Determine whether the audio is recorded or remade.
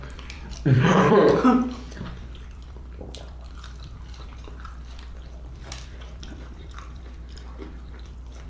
remade